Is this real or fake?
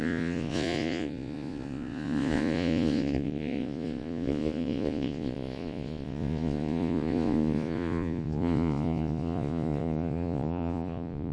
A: fake